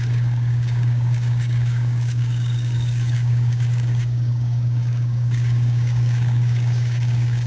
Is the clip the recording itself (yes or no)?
no